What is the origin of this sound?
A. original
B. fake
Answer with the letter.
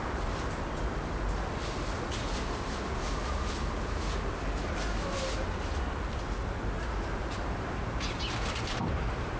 A